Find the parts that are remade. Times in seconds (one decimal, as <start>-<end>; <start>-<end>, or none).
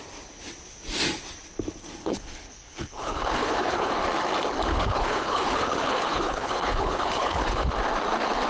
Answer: 2.0-3.9; 4.7-7.7